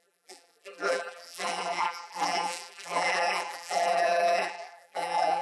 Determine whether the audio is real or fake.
fake